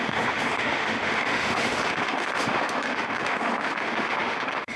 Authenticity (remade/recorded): remade